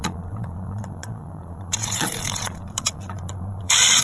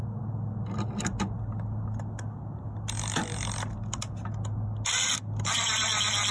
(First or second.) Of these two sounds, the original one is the second